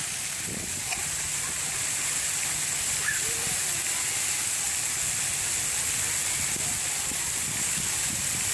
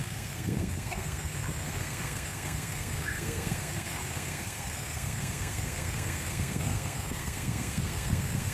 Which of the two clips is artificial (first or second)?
second